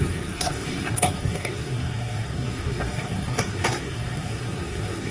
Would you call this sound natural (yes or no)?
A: no